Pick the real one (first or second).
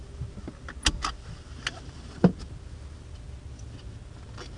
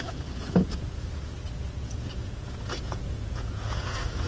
first